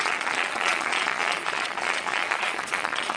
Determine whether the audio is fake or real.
fake